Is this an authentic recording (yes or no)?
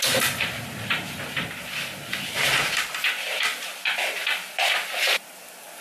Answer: yes